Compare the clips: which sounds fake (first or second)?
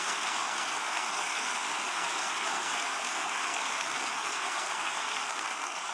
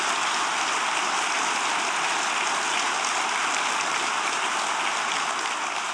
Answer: first